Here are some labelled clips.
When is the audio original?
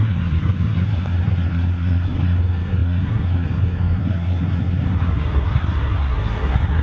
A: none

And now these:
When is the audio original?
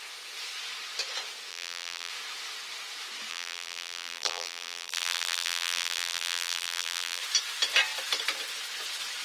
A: 0.0-1.5; 2.1-3.3; 7.2-9.2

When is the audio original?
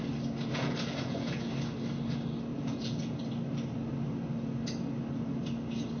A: 0.0-0.5; 1.5-2.5; 3.2-6.0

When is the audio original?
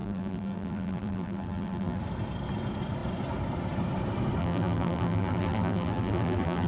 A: 2.0-4.4